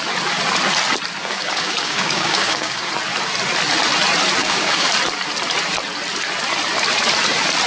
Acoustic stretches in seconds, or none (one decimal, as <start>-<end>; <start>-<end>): 0.0-1.2; 2.9-4.4; 4.9-7.7